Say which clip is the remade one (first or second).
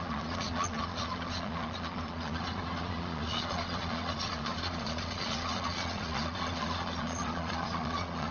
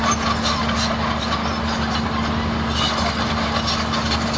first